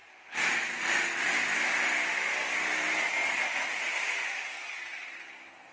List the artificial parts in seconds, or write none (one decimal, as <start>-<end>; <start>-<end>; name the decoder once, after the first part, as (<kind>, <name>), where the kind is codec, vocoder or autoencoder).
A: 0.0-5.7 (vocoder, BigVGAN v2)